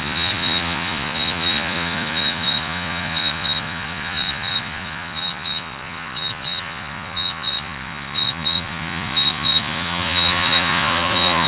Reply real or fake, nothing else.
fake